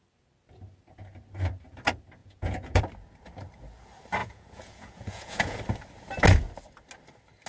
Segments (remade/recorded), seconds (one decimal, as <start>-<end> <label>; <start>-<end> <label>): 0.0-2.2 recorded; 2.2-2.8 remade; 2.8-4.2 recorded; 4.2-5.6 remade; 5.6-7.5 recorded